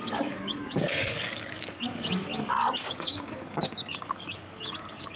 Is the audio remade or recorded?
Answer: remade